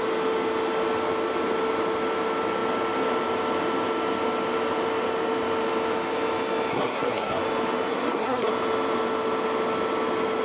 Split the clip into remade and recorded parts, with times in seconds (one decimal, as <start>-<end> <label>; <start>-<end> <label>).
0.0-6.7 recorded; 6.7-7.4 remade; 7.4-7.9 recorded; 7.9-8.5 remade; 8.5-10.4 recorded